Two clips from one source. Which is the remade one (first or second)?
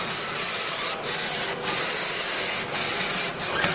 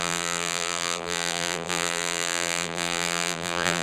second